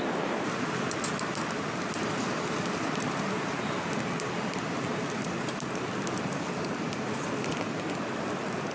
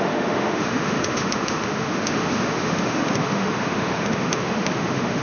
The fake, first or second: second